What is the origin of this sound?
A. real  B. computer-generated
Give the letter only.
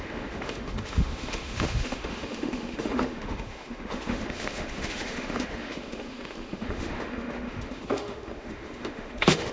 B